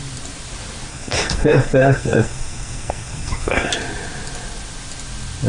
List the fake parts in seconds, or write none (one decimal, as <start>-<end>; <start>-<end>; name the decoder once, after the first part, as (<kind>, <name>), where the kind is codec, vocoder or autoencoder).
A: 0.9-3.7 (codec, SNAC)